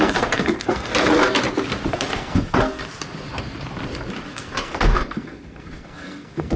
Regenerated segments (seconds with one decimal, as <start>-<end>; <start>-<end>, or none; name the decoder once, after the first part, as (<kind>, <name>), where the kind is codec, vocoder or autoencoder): 0.0-0.9 (codec, SNAC); 1.9-2.8; 4.3-6.6